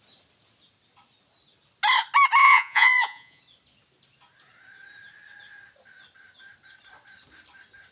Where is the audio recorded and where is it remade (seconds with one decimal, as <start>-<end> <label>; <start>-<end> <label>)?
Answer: 0.0-2.4 recorded; 2.4-3.4 remade; 3.4-7.9 recorded